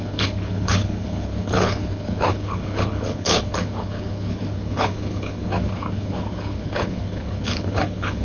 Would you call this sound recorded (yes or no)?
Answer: no